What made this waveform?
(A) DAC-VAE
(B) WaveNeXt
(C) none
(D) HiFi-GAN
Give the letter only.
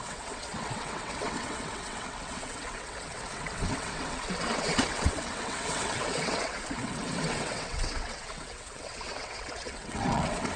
B